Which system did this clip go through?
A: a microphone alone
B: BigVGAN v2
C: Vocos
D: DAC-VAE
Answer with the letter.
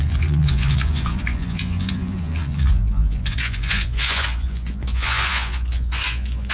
C